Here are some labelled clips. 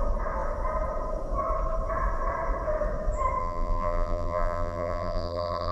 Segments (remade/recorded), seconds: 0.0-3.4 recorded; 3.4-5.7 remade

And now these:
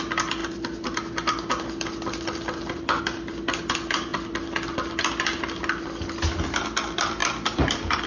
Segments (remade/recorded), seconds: 0.0-8.1 recorded

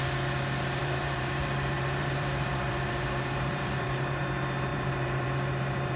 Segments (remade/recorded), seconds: 0.0-0.8 recorded; 0.8-4.2 remade; 4.2-4.7 recorded; 4.7-6.0 remade

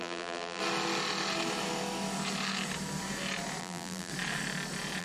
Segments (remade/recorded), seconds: 0.0-0.6 remade; 0.6-3.6 recorded; 3.6-4.1 remade; 4.1-5.0 recorded

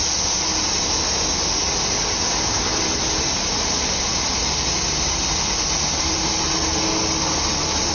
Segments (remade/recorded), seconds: 0.0-7.9 recorded

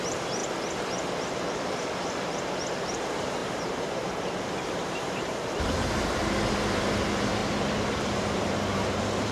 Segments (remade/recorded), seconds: 0.0-0.4 remade; 0.4-2.8 recorded; 2.8-7.4 remade; 7.4-8.0 recorded; 8.0-9.3 remade